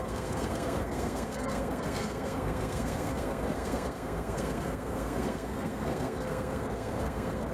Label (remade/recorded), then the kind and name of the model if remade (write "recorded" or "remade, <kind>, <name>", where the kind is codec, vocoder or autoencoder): remade, codec, SNAC